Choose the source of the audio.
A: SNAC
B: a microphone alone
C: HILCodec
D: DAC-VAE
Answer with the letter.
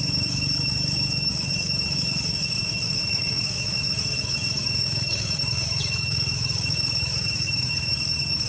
D